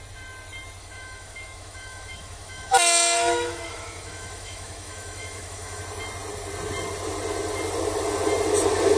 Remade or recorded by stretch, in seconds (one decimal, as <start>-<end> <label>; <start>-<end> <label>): 0.0-0.8 recorded; 0.8-5.8 remade; 5.8-9.0 recorded